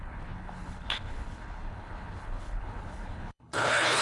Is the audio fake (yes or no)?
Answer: yes